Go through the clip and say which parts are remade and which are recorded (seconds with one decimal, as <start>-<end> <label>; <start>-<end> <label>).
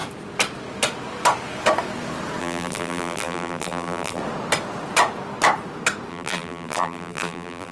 0.0-2.4 recorded; 2.4-4.2 remade; 4.2-6.1 recorded; 6.1-7.7 remade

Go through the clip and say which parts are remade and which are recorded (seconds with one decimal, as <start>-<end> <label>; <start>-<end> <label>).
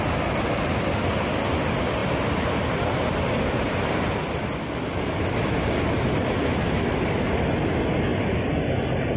0.0-9.2 recorded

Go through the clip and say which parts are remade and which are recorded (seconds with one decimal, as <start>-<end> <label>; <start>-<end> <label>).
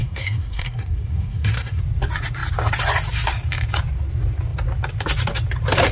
0.0-1.8 remade; 1.8-5.9 recorded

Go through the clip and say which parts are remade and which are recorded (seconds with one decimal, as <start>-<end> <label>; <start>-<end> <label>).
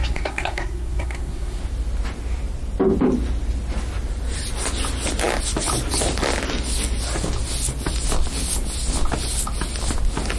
0.0-1.6 remade; 1.6-10.4 recorded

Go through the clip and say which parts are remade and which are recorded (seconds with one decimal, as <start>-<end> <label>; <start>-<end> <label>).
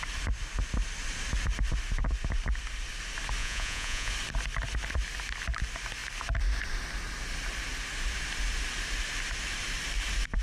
0.0-3.4 recorded; 3.4-4.1 remade; 4.1-10.4 recorded